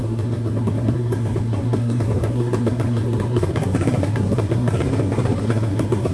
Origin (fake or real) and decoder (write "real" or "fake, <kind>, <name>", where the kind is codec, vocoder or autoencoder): fake, codec, SNAC